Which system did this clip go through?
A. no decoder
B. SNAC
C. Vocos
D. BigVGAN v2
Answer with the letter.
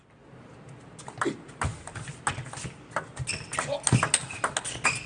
A